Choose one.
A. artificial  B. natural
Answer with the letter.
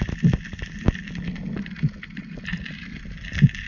B